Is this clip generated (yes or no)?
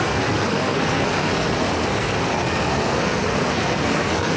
yes